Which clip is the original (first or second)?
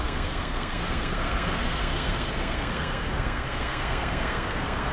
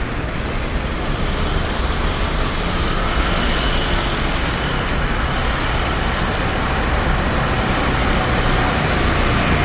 second